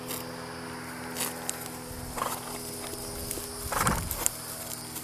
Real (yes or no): yes